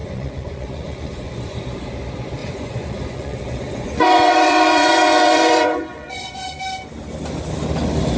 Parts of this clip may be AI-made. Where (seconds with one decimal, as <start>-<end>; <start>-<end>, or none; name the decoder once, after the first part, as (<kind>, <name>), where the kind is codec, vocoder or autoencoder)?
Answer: 0.0-1.6 (vocoder, Vocos); 2.4-6.6